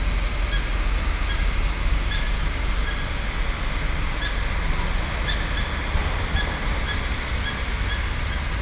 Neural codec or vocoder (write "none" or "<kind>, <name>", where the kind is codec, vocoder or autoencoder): none